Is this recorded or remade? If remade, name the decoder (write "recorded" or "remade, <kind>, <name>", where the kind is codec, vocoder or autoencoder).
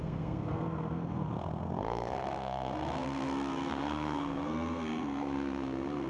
remade, codec, SNAC